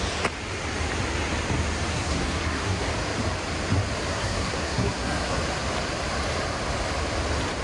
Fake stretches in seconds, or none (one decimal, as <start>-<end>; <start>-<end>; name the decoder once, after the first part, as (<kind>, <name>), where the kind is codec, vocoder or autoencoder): 1.9-2.9 (codec, SNAC); 4.1-5.4